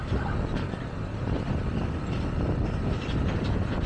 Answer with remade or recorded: recorded